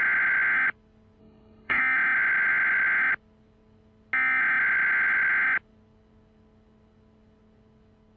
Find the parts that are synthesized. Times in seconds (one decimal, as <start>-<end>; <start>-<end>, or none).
1.2-1.8